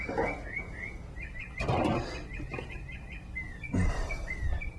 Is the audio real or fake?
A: real